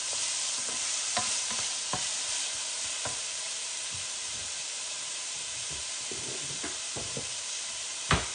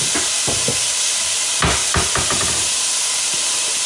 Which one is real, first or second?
second